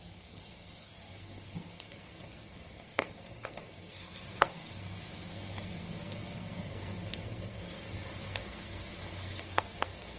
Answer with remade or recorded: remade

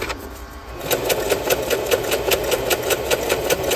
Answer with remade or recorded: remade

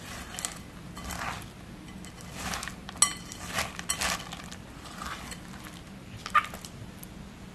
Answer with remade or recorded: recorded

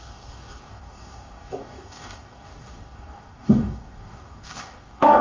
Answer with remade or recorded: remade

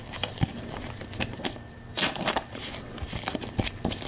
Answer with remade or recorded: remade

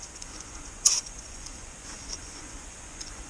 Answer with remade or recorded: remade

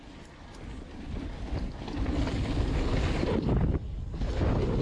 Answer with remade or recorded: recorded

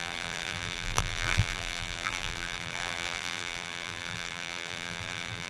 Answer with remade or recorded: remade